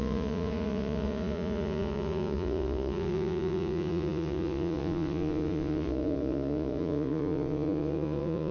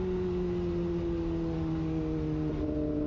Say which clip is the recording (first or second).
second